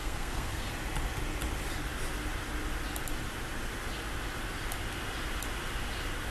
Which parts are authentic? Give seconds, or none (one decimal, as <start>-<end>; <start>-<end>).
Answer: 0.7-6.3